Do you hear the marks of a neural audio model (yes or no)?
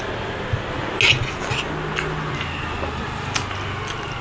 no